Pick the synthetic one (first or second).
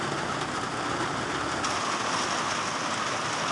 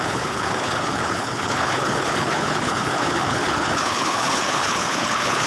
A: second